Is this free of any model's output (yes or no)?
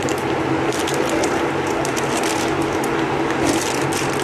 yes